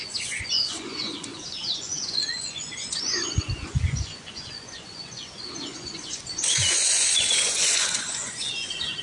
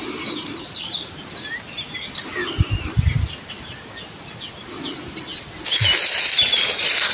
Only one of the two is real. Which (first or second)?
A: second